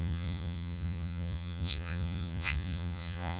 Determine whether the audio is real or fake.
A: fake